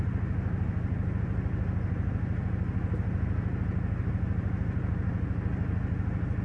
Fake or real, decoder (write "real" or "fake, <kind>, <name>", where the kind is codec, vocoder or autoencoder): real